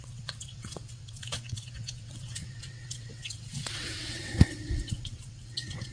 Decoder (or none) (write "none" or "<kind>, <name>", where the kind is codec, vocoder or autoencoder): vocoder, WaveNeXt